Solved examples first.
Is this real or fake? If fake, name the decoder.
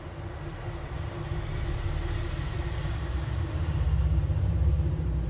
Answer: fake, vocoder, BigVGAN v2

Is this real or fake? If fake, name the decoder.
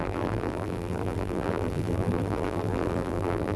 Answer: fake, vocoder, BigVGAN v2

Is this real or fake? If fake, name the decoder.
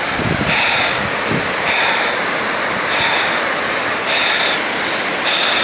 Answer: fake, vocoder, BigVGAN v2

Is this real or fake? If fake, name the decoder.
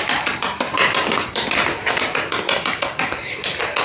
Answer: fake, vocoder, BigVGAN v2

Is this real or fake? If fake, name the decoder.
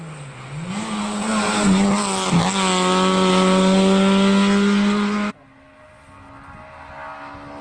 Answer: real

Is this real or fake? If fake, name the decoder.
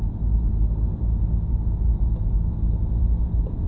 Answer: fake, vocoder, BigVGAN v2